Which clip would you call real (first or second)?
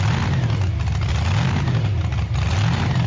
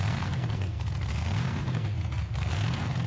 first